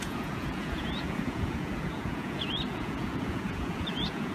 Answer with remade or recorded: remade